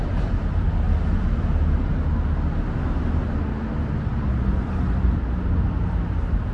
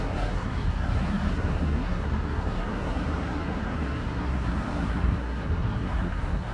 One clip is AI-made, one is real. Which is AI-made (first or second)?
second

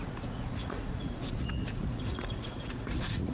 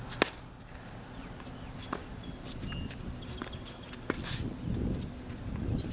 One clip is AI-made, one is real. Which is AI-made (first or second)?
first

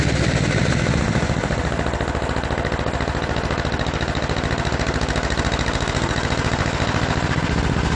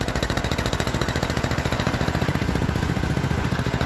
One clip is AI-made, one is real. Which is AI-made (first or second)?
second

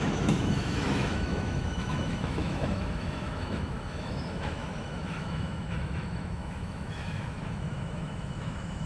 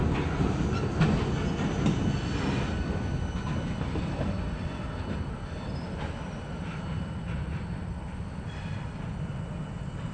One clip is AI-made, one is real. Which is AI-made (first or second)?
first